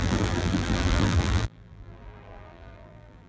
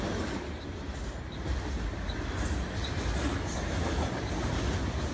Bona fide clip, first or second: second